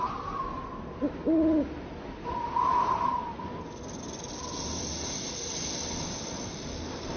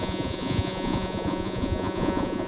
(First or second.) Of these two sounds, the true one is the first